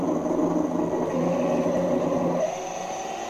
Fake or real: real